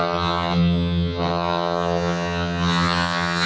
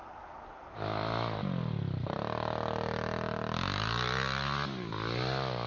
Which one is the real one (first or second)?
second